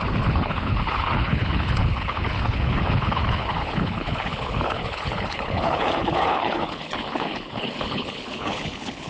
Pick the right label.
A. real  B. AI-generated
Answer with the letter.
B